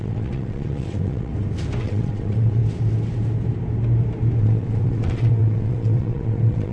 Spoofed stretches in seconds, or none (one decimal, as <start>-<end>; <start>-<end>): 0.0-1.3; 1.8-2.6; 4.4-6.7